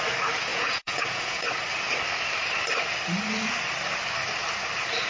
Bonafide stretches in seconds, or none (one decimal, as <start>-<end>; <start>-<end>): 0.0-0.5; 1.5-5.1